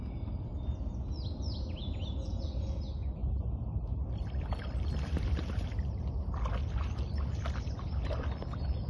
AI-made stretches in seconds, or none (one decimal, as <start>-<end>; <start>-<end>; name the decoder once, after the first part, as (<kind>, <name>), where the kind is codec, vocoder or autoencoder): none